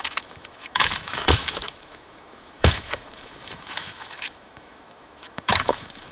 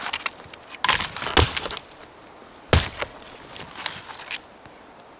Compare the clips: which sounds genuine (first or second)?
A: second